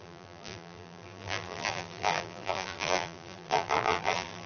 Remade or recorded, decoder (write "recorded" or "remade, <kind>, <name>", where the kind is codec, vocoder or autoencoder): remade, vocoder, BigVGAN v2